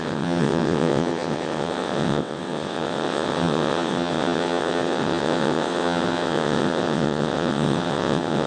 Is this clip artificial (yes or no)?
yes